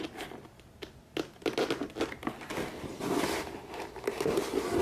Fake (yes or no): no